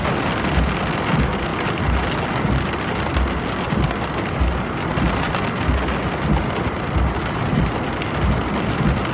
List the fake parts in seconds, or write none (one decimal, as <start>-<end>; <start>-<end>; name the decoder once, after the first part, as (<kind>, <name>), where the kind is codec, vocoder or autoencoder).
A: none